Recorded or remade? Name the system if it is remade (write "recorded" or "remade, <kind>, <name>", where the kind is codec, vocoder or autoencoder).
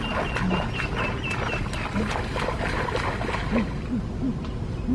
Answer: recorded